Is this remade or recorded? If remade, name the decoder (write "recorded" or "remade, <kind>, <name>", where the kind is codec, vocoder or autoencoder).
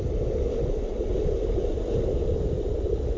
recorded